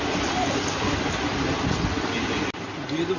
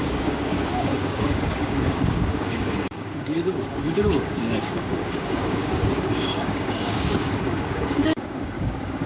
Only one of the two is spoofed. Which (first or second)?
second